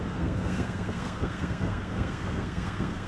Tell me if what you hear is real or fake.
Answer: fake